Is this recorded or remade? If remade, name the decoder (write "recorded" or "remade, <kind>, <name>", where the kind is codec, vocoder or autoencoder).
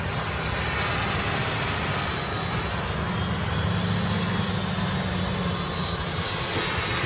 recorded